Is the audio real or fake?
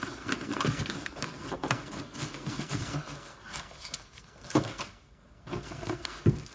fake